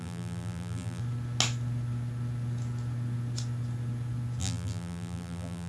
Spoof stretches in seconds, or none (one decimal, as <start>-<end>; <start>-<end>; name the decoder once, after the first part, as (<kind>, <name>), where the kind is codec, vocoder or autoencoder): 0.0-1.0 (vocoder, BigVGAN v2); 4.4-5.7